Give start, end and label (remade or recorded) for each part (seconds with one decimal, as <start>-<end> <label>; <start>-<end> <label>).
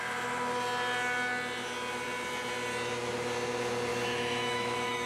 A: 0.0-3.9 recorded; 3.9-5.1 remade